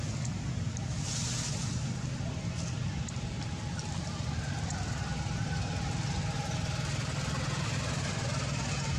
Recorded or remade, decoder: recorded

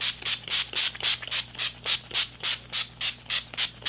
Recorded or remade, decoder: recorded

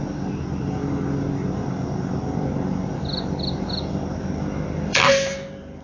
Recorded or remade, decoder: remade, vocoder, BigVGAN v2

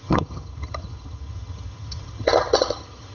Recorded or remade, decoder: remade, vocoder, HiFi-GAN